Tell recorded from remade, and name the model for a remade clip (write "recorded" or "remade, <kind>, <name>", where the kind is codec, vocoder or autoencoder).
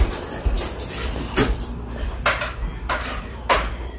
recorded